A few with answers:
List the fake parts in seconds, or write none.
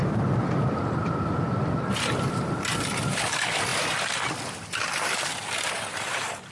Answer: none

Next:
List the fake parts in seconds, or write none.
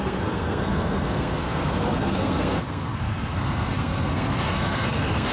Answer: 0.0-5.3 (codec, SNAC)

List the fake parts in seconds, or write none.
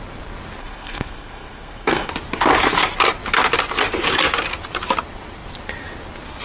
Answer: 0.6-2.1 (codec, SNAC)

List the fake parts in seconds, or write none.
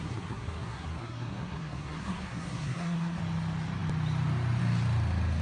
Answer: 0.0-3.2 (codec, SNAC)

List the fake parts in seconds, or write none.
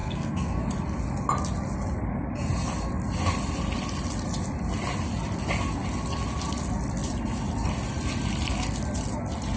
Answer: 0.0-0.6 (codec, SNAC)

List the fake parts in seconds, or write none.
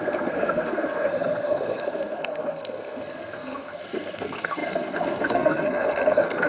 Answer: 0.0-6.5 (codec, SNAC)